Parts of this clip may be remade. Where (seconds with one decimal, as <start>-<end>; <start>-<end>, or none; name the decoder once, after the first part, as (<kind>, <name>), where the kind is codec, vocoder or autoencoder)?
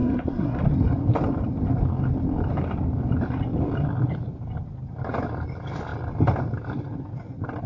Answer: 0.0-0.6 (codec, SNAC)